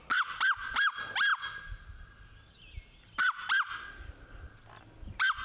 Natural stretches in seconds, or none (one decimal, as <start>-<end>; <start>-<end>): 0.0-5.4